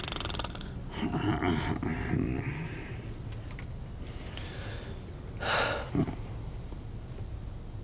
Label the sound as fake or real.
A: real